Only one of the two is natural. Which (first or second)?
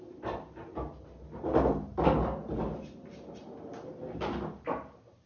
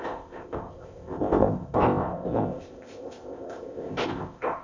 first